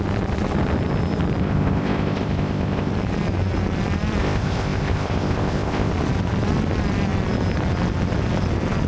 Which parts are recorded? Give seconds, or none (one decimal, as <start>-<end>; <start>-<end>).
0.0-1.4; 2.9-4.2; 5.9-8.9